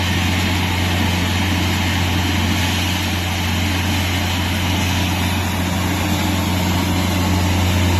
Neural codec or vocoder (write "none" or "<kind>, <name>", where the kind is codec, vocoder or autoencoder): none